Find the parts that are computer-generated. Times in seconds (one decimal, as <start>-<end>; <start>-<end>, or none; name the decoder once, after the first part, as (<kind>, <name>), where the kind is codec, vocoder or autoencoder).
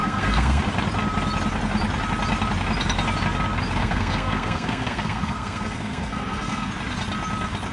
0.0-0.6 (codec, SNAC); 3.8-6.7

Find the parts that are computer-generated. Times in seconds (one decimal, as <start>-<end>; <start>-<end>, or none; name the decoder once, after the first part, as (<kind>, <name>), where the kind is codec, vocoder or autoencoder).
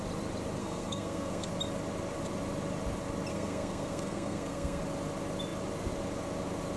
0.6-1.5 (codec, SNAC); 3.3-4.8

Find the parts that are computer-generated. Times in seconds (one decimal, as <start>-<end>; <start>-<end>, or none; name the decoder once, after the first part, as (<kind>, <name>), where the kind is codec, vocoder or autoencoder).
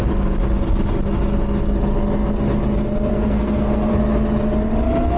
3.1-3.9 (codec, SNAC)